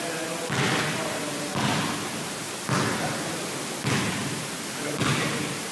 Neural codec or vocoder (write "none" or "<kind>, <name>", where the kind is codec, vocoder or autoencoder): none